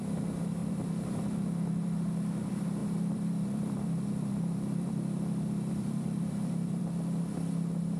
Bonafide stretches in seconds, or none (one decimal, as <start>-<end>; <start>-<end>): 0.0-0.6; 2.4-2.8; 6.8-8.0